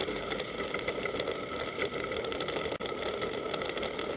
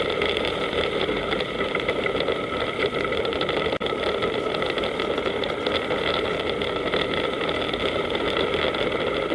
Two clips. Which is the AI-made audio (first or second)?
second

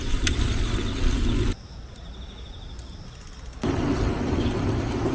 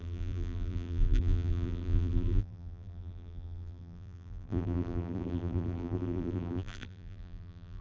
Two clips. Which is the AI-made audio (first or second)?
second